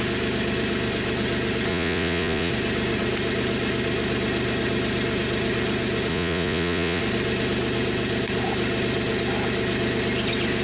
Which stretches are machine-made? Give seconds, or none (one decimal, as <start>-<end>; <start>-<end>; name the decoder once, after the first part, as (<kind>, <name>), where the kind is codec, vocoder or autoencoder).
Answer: 1.7-2.5 (vocoder, Vocos); 6.1-7.0

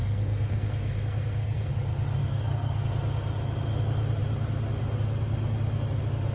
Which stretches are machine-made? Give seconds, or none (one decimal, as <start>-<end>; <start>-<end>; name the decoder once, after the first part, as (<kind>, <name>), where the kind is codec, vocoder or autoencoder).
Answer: 0.0-1.7 (codec, SNAC); 2.2-2.9